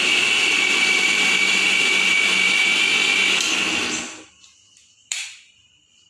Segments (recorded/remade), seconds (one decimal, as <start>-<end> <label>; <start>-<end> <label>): 0.0-5.0 recorded; 5.0-6.1 remade